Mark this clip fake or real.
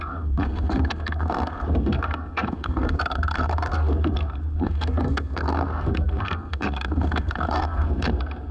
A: fake